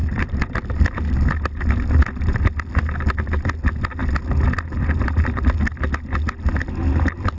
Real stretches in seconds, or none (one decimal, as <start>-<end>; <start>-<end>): 1.9-7.4